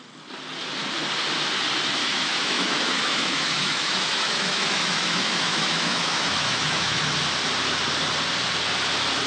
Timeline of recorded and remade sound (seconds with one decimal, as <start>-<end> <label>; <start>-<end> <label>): 0.0-2.0 recorded; 2.0-7.0 remade; 7.0-9.3 recorded